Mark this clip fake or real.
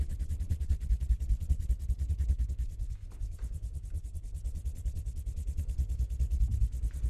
real